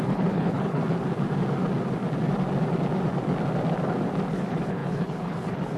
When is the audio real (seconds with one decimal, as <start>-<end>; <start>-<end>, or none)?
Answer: 0.8-4.3